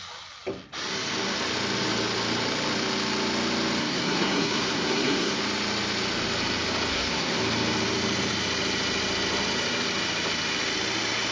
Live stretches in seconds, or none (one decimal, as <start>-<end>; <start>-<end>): 0.0-3.8; 5.4-6.9; 7.4-11.3